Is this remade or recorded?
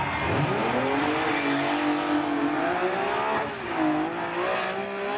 recorded